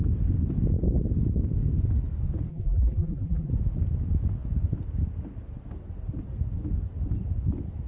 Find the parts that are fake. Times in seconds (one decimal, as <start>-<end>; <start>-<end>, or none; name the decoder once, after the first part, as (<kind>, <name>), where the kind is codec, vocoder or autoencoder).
2.5-3.5 (vocoder, BigVGAN v2)